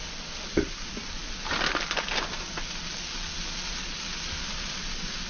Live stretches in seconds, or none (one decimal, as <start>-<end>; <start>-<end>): 0.0-5.3